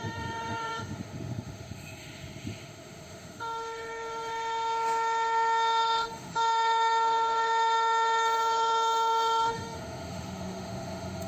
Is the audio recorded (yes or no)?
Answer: no